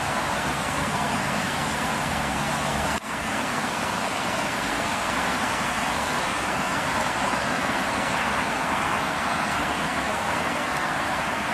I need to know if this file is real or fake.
fake